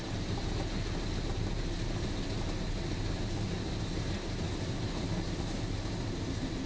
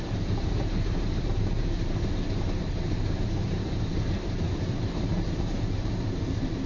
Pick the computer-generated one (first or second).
second